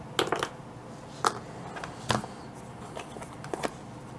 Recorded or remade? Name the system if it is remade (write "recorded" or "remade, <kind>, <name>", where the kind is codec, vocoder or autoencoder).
recorded